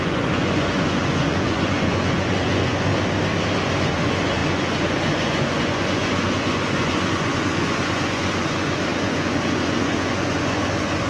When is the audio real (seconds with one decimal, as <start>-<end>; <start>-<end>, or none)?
2.9-3.8